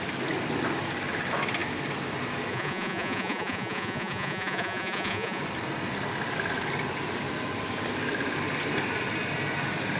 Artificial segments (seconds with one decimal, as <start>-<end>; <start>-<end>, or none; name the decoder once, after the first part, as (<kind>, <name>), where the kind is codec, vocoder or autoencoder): 2.5-5.4 (vocoder, Vocos)